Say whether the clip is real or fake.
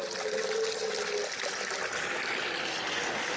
real